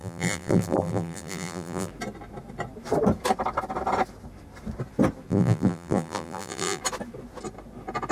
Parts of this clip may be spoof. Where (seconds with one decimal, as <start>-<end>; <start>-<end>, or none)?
0.0-1.9; 5.3-6.8